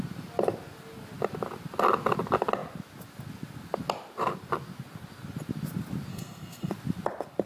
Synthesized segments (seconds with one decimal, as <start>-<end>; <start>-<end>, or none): 6.1-6.7